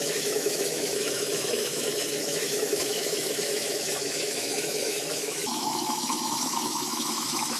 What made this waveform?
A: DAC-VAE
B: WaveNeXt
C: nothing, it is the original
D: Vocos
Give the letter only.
A